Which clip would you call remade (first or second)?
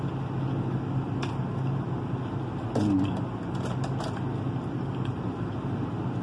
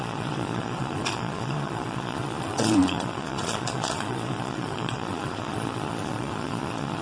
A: second